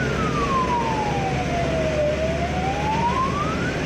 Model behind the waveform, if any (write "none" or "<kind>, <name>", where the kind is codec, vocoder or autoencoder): none